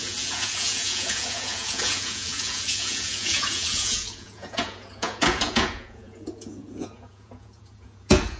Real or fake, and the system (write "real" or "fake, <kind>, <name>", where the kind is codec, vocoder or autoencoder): fake, vocoder, Vocos